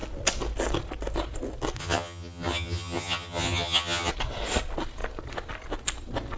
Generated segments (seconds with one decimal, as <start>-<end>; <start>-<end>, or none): 1.8-4.1